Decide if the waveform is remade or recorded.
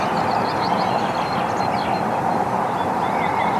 recorded